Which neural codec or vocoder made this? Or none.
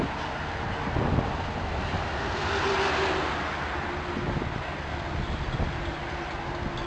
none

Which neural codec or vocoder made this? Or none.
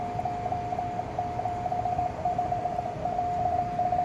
none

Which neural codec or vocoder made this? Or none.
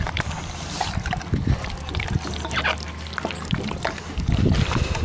vocoder, BigVGAN v2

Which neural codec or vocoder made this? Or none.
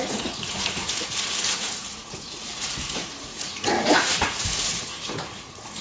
vocoder, Vocos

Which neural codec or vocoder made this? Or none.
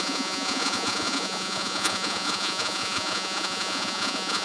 vocoder, Vocos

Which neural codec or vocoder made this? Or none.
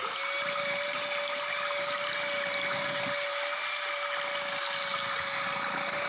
none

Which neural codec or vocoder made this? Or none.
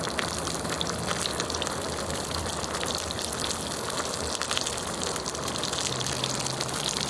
none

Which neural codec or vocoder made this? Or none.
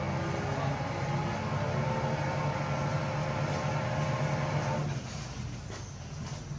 none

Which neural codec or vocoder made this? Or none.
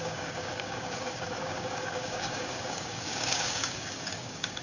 codec, DAC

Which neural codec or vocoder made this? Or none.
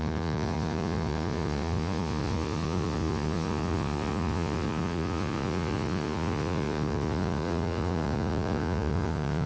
vocoder, Vocos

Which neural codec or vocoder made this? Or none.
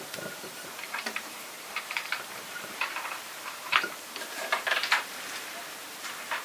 vocoder, BigVGAN v2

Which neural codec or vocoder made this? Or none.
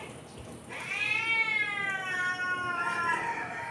none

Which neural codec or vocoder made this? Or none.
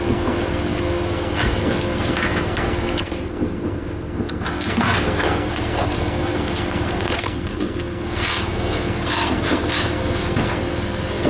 codec, SNAC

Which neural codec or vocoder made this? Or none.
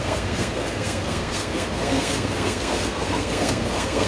codec, SNAC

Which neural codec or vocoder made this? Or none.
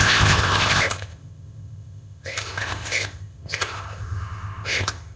codec, ZipCodec